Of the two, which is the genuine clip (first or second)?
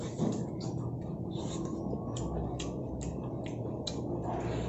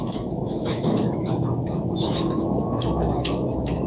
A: first